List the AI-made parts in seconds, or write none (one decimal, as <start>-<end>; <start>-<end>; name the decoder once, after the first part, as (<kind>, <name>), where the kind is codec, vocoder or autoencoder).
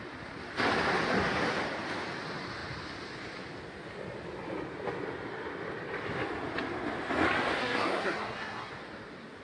7.6-8.7 (codec, SNAC)